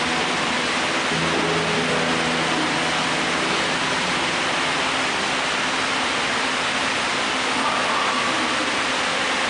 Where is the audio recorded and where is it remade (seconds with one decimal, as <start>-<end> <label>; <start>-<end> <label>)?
0.0-9.5 recorded